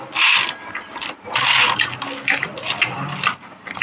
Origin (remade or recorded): recorded